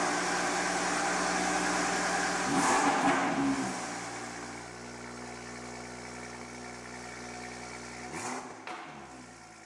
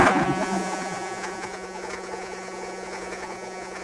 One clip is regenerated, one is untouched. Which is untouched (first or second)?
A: first